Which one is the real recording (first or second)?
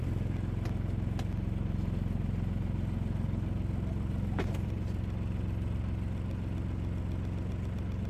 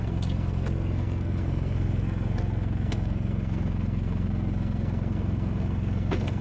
first